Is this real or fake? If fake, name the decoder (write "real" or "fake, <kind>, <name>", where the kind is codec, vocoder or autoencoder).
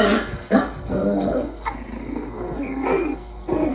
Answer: fake, codec, SNAC